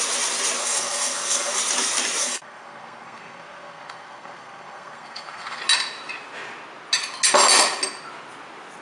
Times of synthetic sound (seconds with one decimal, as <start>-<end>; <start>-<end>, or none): 0.6-1.6; 2.2-5.6